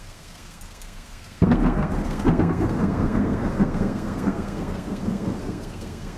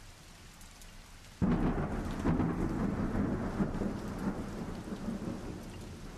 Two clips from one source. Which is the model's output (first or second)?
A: first